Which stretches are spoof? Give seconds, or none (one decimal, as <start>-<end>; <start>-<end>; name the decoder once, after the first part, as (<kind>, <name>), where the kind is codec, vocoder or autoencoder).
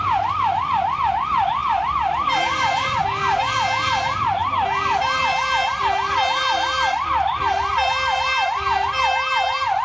1.6-3.0 (vocoder, BigVGAN v2)